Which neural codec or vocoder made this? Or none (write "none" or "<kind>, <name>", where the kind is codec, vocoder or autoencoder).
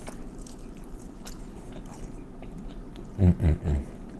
none